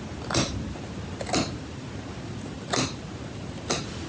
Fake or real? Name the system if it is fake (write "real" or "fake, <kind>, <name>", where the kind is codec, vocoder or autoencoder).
real